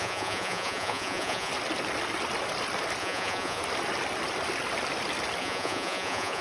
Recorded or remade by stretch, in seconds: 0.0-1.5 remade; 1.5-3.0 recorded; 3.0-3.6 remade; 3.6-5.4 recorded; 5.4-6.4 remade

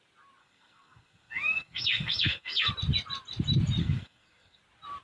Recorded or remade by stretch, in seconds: 0.0-0.4 recorded; 0.4-2.7 remade; 2.7-3.8 recorded; 3.8-4.6 remade; 4.6-5.0 recorded

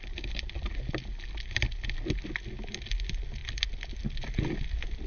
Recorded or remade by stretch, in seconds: 0.0-5.1 recorded

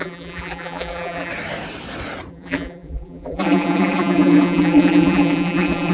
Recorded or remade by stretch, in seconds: 0.0-1.3 remade; 1.3-2.3 recorded; 2.3-5.9 remade

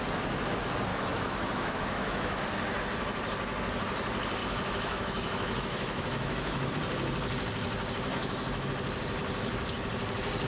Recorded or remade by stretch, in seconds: 0.0-0.9 recorded; 0.9-2.4 remade; 2.4-4.4 recorded; 4.4-6.7 remade; 6.7-8.1 recorded; 8.1-8.7 remade; 8.7-10.5 recorded

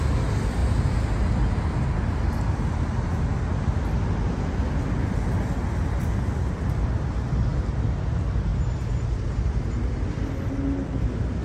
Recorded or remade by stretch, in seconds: 0.0-8.5 recorded; 8.5-10.1 remade; 10.1-11.4 recorded

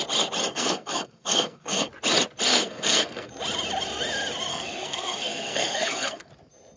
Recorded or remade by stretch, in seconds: 0.0-0.5 recorded; 0.5-1.9 remade; 1.9-2.5 recorded; 2.5-3.3 remade; 3.3-4.5 recorded; 4.5-6.3 remade; 6.3-6.8 recorded

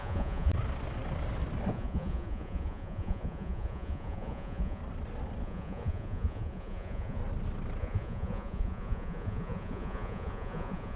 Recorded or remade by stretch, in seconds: 0.0-0.5 remade; 0.5-1.7 recorded; 1.7-4.8 remade; 4.8-5.4 recorded; 5.4-7.2 remade; 7.2-7.8 recorded; 7.8-11.0 remade